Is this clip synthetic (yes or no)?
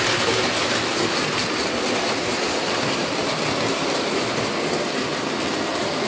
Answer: no